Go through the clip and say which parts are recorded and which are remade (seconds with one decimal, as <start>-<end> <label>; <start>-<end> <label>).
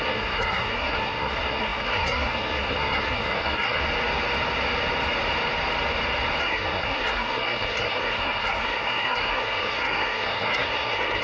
0.0-3.8 remade; 3.8-6.4 recorded; 6.4-11.2 remade